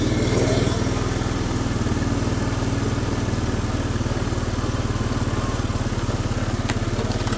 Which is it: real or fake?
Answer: real